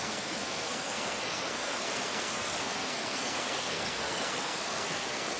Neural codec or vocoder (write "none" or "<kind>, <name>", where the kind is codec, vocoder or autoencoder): codec, SNAC